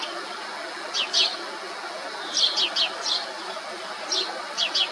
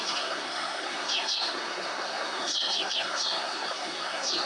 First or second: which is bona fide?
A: first